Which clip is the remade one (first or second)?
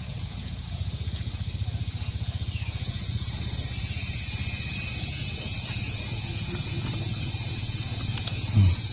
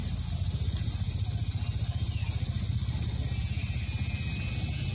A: first